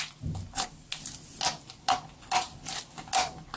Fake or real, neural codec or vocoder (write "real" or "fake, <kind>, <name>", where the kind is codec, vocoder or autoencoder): real